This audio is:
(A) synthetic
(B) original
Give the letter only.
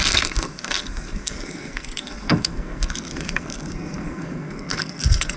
A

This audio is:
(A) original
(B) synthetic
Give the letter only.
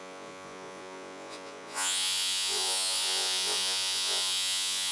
B